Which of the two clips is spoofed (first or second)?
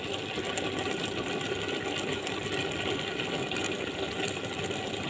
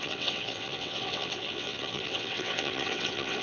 second